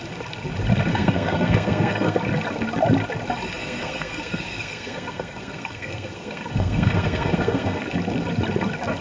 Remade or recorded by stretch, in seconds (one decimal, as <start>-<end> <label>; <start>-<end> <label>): 0.0-0.9 recorded; 0.9-2.2 remade; 2.2-3.6 recorded; 3.6-7.8 remade; 7.8-9.0 recorded